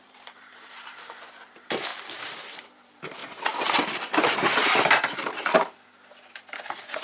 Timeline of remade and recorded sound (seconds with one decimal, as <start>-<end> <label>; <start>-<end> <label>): 0.0-3.2 remade; 3.2-7.0 recorded